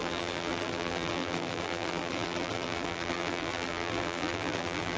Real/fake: fake